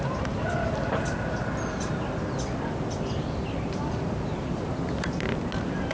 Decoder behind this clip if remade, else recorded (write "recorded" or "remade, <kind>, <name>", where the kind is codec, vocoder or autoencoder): recorded